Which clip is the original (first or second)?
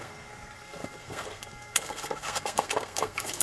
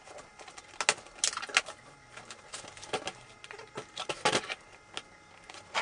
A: second